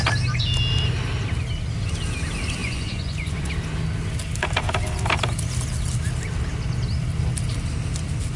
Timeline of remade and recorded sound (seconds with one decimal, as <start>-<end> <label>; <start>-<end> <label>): 0.0-2.6 recorded; 2.6-3.5 remade; 3.5-8.4 recorded